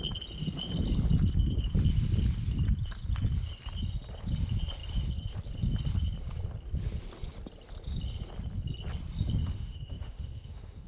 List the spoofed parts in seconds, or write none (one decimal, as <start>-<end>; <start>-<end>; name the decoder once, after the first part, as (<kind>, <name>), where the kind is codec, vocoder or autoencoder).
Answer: 9.4-10.9 (autoencoder, DAC-VAE)

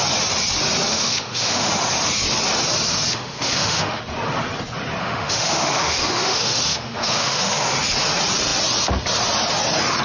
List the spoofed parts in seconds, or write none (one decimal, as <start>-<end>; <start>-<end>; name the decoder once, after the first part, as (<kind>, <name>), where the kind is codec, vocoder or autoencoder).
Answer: 0.9-1.7 (autoencoder, DAC-VAE); 3.1-4.0; 5.0-7.6